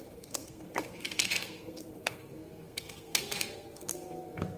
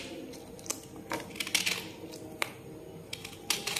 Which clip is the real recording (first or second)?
second